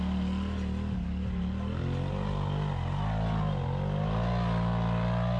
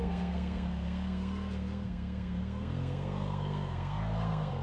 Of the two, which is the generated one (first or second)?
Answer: second